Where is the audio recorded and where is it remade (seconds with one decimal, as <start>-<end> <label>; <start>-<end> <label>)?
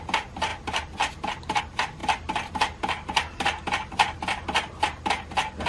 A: 0.0-5.7 recorded